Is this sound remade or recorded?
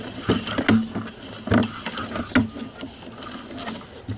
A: recorded